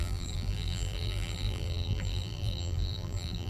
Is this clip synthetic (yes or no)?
yes